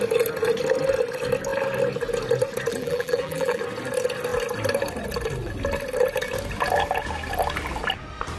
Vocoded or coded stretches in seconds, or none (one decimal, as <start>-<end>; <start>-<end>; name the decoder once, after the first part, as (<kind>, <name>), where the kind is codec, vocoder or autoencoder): 2.7-3.6 (vocoder, BigVGAN v2)